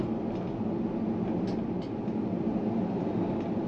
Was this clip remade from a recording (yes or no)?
no